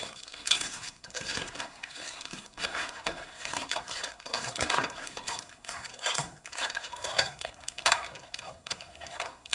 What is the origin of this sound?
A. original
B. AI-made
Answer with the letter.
B